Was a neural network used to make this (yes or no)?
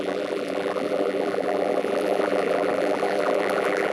yes